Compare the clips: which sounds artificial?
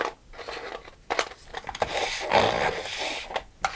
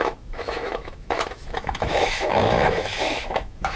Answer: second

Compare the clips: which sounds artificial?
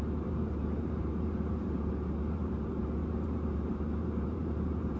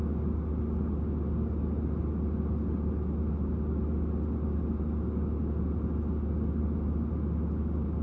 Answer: first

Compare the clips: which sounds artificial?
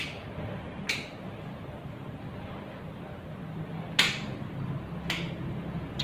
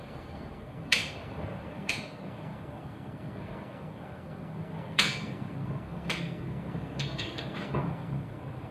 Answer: second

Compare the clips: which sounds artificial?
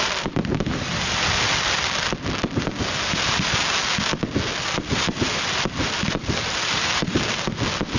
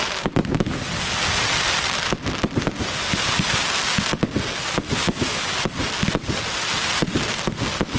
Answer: first